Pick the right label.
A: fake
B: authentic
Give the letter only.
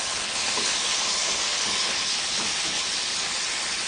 A